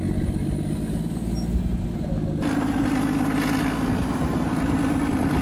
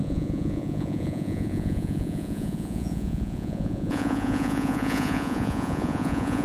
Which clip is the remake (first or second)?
second